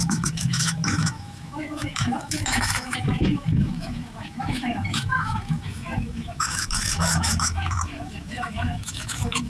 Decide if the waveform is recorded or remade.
remade